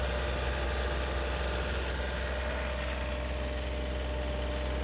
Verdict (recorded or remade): recorded